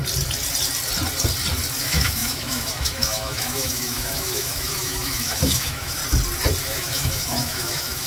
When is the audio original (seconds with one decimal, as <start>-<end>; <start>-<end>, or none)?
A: 0.0-1.8; 6.0-6.6